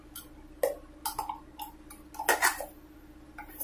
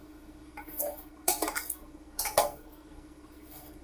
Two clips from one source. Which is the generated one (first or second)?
second